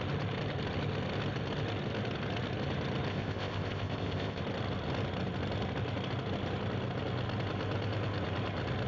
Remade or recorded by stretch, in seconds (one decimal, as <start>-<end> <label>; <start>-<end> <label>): 0.0-3.1 recorded; 3.1-4.4 remade; 4.4-8.9 recorded